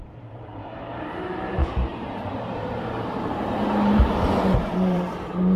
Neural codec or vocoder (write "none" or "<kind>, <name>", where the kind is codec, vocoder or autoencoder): vocoder, BigVGAN v2